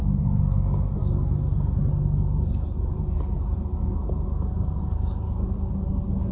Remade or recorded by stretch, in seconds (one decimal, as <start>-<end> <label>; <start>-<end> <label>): 0.0-6.3 recorded